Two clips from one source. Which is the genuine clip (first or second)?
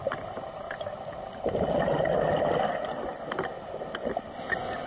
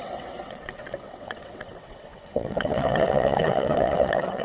first